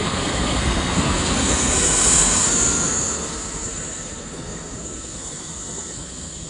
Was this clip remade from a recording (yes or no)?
yes